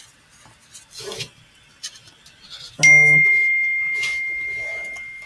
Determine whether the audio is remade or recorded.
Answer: recorded